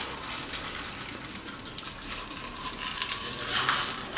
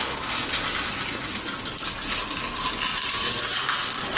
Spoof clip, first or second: first